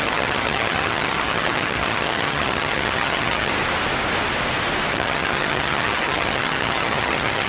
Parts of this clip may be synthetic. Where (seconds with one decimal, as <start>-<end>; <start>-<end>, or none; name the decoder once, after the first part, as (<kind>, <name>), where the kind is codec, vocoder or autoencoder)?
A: 0.0-3.5 (vocoder, HiFi-GAN); 4.9-7.5